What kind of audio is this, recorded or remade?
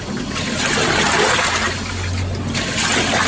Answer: recorded